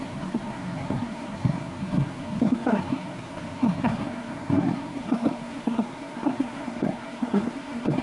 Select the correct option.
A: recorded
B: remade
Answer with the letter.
B